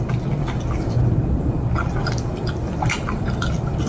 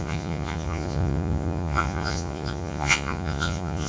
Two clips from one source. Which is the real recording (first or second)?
first